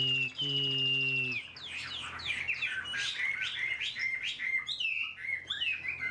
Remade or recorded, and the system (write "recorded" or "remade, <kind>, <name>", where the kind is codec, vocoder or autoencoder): recorded